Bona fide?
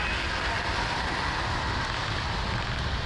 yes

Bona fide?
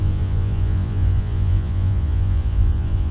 no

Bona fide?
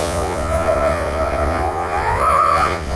no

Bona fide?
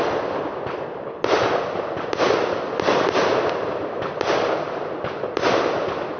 yes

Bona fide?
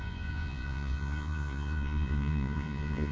no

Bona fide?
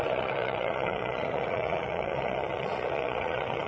no